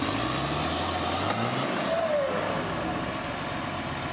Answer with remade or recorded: recorded